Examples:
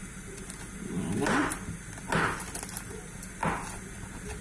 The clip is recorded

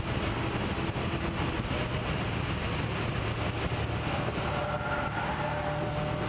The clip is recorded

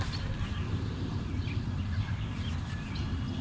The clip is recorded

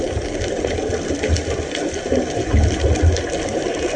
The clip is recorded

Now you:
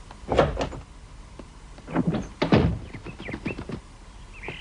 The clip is recorded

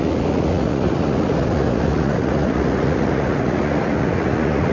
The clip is remade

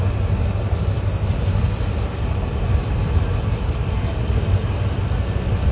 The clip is recorded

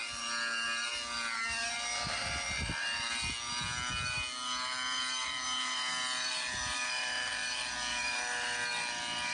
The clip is recorded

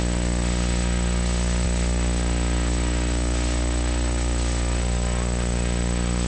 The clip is recorded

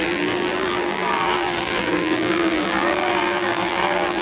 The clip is remade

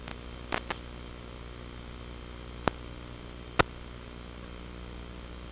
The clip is recorded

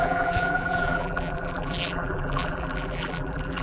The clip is remade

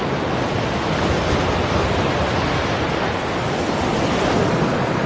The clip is recorded